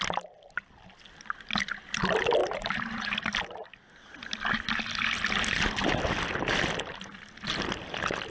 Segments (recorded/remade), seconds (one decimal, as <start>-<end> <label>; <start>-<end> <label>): 0.0-8.3 recorded